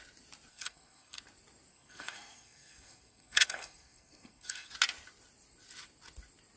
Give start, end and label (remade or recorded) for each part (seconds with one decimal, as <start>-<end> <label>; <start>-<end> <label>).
0.0-0.5 recorded; 0.5-1.2 remade; 1.2-1.7 recorded; 1.7-4.7 remade; 4.7-6.6 recorded